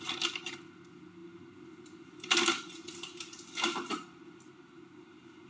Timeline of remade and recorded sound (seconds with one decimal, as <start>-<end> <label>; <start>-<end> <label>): 0.0-5.5 recorded